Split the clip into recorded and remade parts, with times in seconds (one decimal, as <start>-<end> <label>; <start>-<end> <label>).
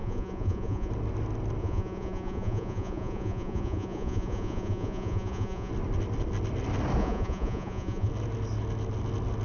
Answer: 0.0-0.9 remade; 0.9-1.6 recorded; 1.6-5.7 remade; 5.7-7.0 recorded; 7.0-8.1 remade; 8.1-9.4 recorded